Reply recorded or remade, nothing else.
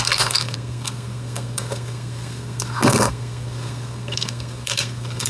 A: remade